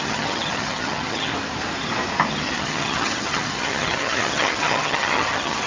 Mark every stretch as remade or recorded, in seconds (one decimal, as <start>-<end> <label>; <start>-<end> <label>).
0.0-1.3 remade; 1.3-2.3 recorded; 2.3-5.7 remade